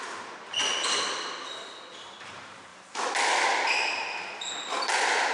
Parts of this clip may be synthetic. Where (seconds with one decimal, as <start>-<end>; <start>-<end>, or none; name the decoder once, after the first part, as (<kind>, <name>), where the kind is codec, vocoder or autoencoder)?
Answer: none